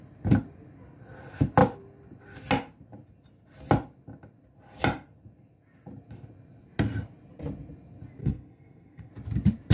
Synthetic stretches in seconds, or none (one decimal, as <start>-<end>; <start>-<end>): 8.2-9.1